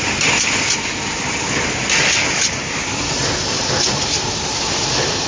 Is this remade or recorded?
recorded